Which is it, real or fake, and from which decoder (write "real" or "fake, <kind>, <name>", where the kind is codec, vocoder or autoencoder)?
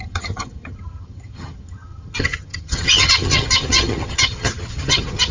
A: fake, vocoder, HiFi-GAN